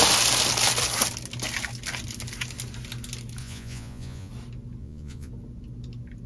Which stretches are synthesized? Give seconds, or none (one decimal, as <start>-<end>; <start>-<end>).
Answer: 3.4-4.3; 4.8-5.3